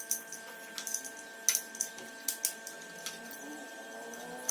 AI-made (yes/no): no